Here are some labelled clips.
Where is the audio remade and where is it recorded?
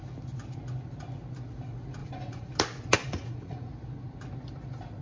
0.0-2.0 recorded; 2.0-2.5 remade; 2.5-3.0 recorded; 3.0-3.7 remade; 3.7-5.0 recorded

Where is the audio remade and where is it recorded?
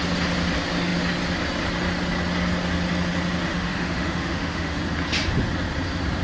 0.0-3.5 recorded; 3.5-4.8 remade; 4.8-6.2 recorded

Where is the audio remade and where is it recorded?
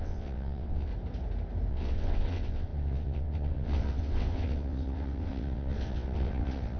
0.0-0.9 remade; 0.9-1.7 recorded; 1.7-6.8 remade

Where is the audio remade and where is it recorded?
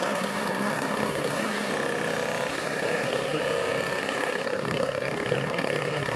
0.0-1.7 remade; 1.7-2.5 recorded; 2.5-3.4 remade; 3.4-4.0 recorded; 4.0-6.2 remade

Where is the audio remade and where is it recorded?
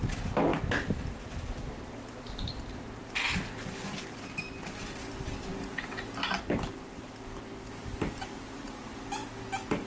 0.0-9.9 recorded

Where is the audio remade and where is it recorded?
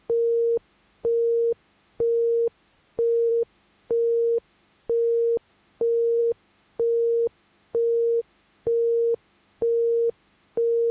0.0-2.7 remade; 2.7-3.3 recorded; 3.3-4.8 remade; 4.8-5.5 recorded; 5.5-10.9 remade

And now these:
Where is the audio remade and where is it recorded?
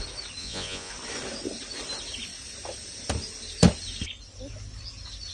0.0-0.4 recorded; 0.4-0.9 remade; 0.9-5.3 recorded